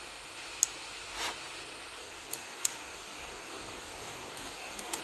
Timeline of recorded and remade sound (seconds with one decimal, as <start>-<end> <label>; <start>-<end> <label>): 0.0-2.0 recorded; 2.0-5.0 remade